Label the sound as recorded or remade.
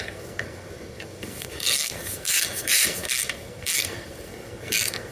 remade